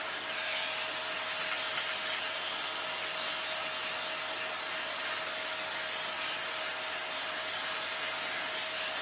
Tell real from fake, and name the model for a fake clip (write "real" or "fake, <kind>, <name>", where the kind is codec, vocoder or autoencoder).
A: real